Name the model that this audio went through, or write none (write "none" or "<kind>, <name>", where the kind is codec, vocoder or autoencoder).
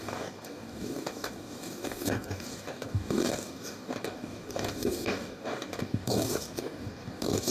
codec, DAC